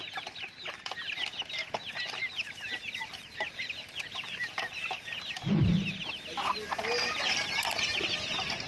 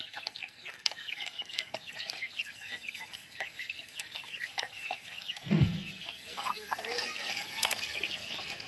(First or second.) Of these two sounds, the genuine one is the first